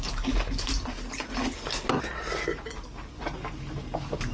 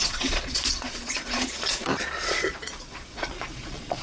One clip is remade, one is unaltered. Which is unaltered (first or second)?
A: first